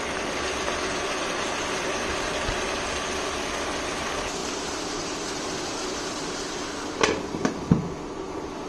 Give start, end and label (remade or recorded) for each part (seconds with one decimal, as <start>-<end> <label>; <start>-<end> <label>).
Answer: 0.0-4.4 recorded; 4.4-7.0 remade; 7.0-8.7 recorded